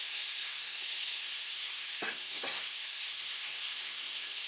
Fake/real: fake